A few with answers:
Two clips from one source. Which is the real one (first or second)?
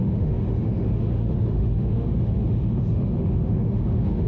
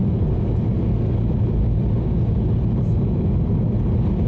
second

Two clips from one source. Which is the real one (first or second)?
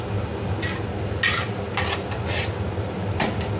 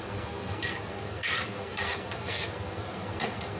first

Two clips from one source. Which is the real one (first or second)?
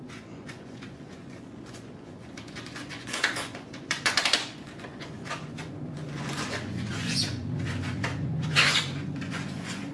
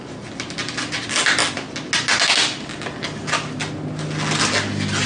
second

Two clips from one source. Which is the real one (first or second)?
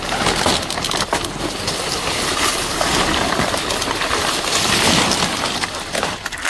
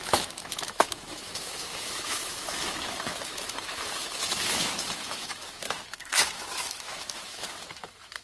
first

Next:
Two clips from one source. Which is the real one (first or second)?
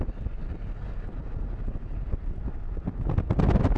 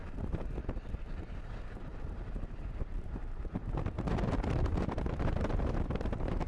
first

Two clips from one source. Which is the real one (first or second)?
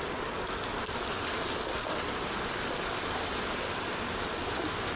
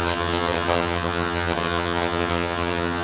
first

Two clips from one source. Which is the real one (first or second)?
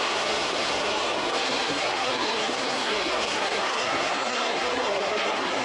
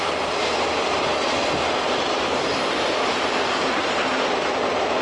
second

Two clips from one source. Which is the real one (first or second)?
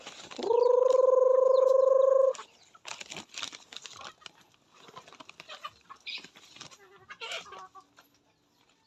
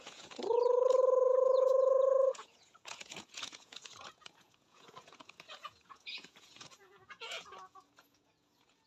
first